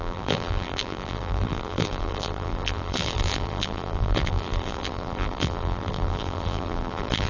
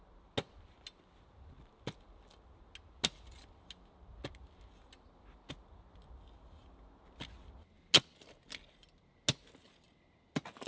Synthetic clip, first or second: first